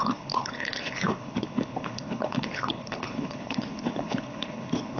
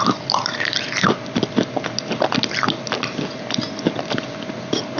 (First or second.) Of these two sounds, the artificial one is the first